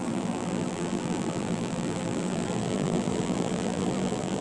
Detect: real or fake fake